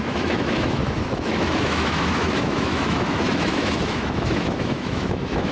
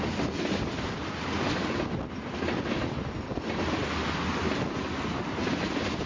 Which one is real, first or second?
second